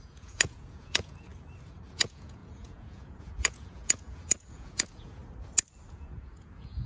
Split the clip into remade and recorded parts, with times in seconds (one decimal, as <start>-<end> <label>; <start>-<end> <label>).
0.0-1.3 remade; 1.3-1.9 recorded; 1.9-5.2 remade; 5.2-5.9 recorded; 5.9-6.9 remade